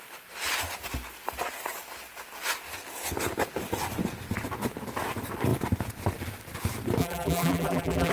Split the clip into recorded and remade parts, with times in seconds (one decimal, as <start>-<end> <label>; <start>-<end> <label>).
0.0-7.0 recorded; 7.0-8.1 remade